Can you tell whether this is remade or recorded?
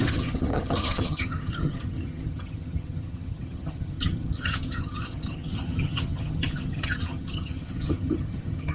remade